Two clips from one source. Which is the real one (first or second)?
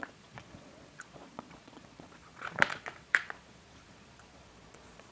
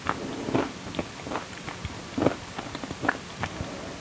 second